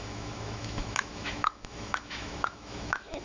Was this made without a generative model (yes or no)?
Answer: no